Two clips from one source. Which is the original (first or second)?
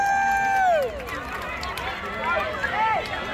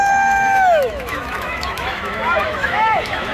first